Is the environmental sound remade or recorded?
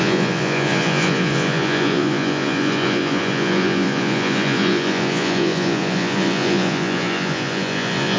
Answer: remade